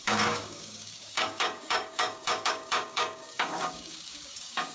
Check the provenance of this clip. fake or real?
fake